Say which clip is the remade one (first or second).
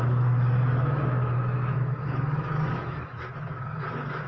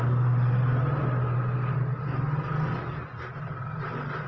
first